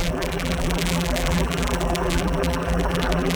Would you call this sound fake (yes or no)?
yes